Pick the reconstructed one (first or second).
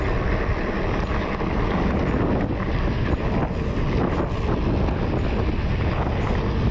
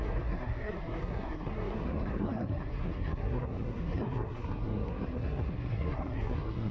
second